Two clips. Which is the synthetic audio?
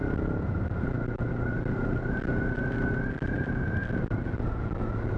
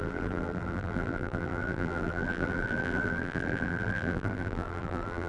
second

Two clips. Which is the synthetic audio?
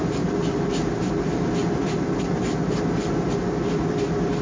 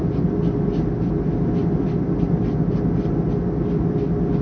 first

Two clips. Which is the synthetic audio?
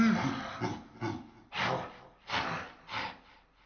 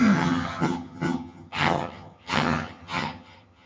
second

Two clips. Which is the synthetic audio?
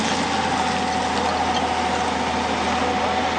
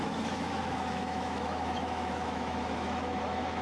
second